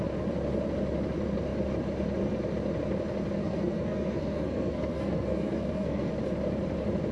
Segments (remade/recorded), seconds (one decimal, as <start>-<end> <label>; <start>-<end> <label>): 0.0-3.4 recorded; 3.4-6.1 remade; 6.1-7.1 recorded